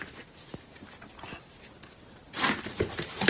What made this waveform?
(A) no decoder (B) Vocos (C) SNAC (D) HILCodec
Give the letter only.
A